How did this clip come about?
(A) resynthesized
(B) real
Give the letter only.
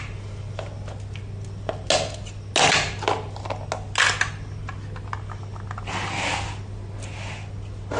B